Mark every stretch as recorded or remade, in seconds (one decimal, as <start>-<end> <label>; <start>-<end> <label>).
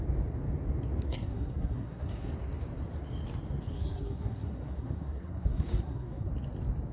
0.0-1.1 recorded; 1.1-2.3 remade; 2.3-3.7 recorded; 3.7-6.3 remade; 6.3-6.9 recorded